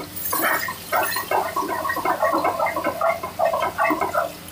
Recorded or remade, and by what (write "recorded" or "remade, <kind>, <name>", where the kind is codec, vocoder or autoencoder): recorded